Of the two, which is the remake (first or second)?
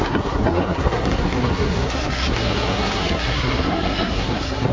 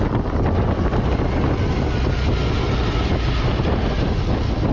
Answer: first